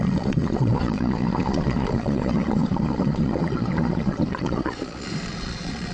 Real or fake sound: fake